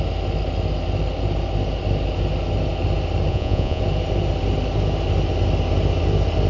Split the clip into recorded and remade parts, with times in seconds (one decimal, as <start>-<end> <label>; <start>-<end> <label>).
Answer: 0.0-3.3 recorded; 3.3-3.8 remade; 3.8-6.5 recorded